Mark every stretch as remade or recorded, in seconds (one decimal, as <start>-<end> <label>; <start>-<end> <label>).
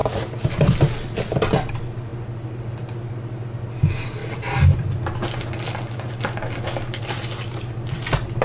0.0-8.4 recorded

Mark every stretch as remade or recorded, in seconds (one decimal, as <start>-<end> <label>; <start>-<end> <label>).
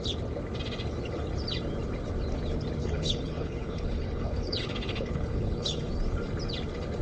0.0-2.8 recorded; 2.8-5.9 remade; 5.9-7.0 recorded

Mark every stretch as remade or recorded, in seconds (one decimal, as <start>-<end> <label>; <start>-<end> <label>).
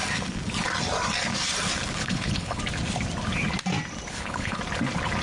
0.0-2.0 recorded; 2.0-2.6 remade; 2.6-4.1 recorded; 4.1-4.6 remade; 4.6-5.2 recorded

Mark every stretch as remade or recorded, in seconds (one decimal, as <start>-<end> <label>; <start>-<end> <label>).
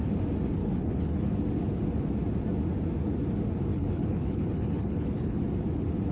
0.0-0.6 recorded; 0.6-1.3 remade; 1.3-3.7 recorded; 3.7-5.4 remade; 5.4-6.1 recorded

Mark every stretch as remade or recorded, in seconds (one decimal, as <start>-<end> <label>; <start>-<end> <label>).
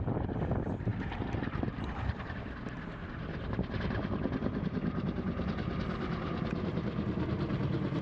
0.0-8.0 recorded